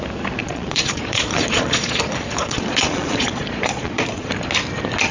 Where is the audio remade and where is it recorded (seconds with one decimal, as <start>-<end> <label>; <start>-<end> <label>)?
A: 0.0-0.4 recorded; 0.4-2.0 remade; 2.0-2.4 recorded; 2.4-4.3 remade; 4.3-5.1 recorded

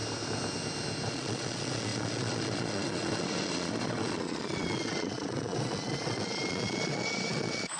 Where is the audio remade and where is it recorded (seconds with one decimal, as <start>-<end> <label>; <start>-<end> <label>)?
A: 0.0-1.1 recorded; 1.1-7.8 remade

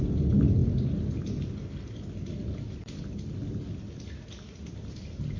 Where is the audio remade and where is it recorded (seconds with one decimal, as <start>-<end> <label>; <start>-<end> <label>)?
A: 0.0-5.4 recorded

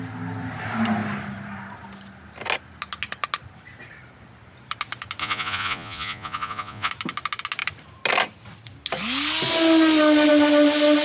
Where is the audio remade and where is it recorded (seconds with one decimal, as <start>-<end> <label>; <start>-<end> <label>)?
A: 0.0-5.2 recorded; 5.2-6.9 remade; 6.9-11.0 recorded

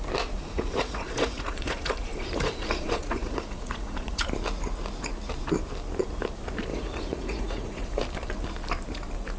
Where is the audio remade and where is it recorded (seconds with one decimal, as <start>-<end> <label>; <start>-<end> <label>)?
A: 0.0-0.4 recorded; 0.4-4.2 remade; 4.2-6.7 recorded; 6.7-8.0 remade; 8.0-9.4 recorded

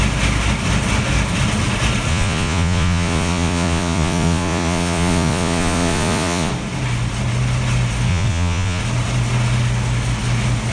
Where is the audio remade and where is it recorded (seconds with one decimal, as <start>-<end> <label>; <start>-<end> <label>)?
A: 0.0-2.1 recorded; 2.1-6.5 remade; 6.5-8.1 recorded; 8.1-8.8 remade; 8.8-10.7 recorded